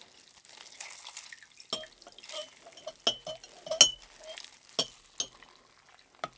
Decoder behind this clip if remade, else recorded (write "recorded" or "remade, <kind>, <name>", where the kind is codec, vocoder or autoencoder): recorded